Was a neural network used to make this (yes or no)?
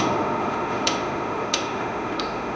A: yes